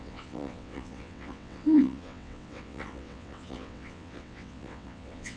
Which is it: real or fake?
fake